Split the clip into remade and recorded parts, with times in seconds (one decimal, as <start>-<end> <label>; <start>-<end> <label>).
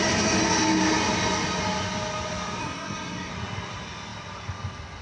0.0-2.6 recorded; 2.6-3.3 remade; 3.3-5.0 recorded